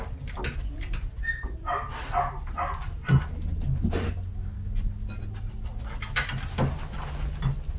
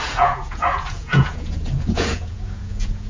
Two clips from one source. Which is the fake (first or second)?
second